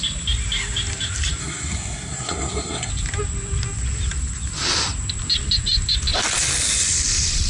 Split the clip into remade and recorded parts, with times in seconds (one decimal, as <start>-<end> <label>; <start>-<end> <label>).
0.0-1.4 recorded; 1.4-2.9 remade; 2.9-7.5 recorded